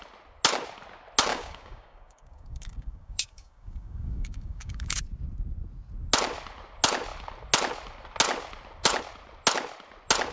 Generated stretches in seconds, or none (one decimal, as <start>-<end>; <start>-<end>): 1.3-5.0